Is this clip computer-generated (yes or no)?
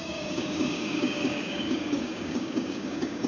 yes